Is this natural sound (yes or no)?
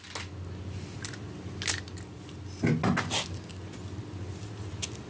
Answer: yes